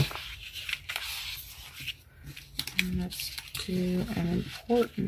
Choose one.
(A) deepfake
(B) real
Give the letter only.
B